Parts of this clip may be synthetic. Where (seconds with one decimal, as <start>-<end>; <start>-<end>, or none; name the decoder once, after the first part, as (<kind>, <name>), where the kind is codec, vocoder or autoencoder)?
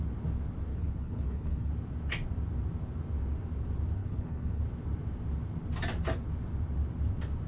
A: 0.7-1.7 (codec, HILCodec); 4.0-4.6